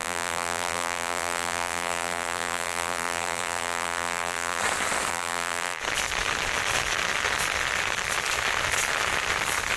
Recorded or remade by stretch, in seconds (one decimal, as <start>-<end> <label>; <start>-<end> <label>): 0.0-4.6 remade; 4.6-5.1 recorded; 5.1-5.8 remade; 5.8-9.8 recorded

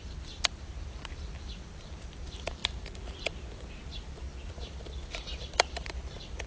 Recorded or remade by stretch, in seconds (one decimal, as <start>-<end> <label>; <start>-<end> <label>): 0.0-2.6 remade; 2.6-4.5 recorded; 4.5-6.5 remade